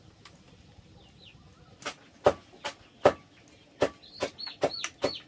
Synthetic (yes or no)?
no